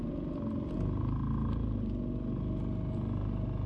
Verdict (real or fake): real